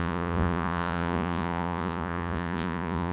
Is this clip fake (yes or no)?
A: yes